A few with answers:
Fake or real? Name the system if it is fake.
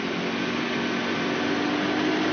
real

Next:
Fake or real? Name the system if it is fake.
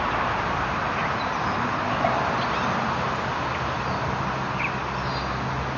real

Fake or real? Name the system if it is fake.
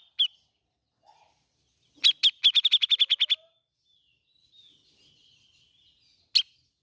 real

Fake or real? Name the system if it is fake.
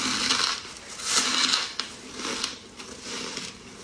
real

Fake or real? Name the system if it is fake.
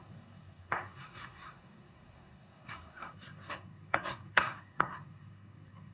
fake, codec, SNAC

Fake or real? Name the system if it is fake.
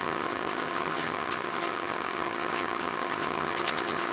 fake, vocoder, HiFi-GAN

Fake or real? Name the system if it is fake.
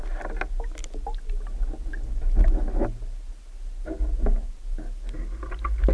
real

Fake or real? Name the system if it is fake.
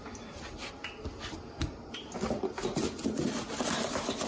real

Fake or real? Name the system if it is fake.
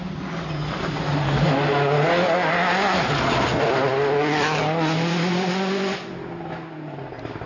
real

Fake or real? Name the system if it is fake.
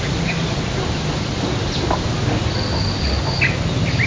real